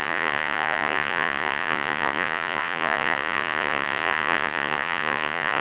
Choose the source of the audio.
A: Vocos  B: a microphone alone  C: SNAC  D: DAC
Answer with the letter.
A